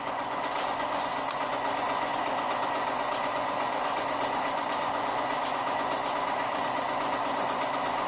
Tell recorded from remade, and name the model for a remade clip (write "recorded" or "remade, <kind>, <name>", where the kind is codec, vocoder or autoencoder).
remade, vocoder, Vocos